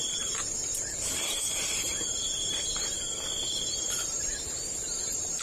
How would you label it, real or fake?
fake